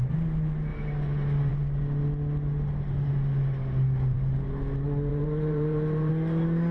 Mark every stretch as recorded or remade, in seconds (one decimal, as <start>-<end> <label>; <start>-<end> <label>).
0.0-5.1 recorded; 5.1-6.1 remade; 6.1-6.7 recorded